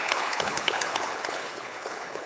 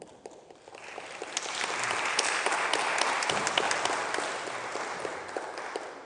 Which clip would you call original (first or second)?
second